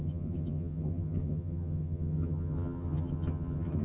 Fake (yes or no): yes